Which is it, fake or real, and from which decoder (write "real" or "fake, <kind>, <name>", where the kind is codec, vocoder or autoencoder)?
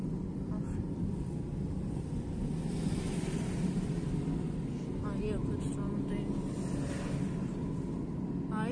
real